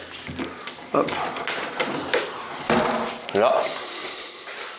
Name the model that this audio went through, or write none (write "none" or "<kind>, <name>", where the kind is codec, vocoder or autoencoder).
none